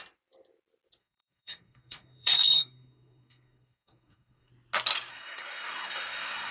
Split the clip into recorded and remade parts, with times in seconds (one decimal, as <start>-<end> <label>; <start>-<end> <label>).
0.0-1.0 recorded; 1.0-4.5 remade; 4.5-5.1 recorded; 5.1-6.5 remade